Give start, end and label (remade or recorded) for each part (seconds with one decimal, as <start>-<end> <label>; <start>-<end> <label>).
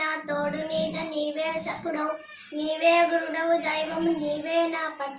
0.0-1.5 recorded; 1.5-2.1 remade; 2.1-5.2 recorded